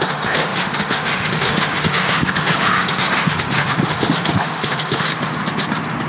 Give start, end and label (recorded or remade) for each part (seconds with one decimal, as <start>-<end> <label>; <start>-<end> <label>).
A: 0.0-5.1 remade; 5.1-6.1 recorded